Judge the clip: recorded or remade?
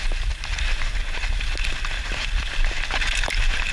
recorded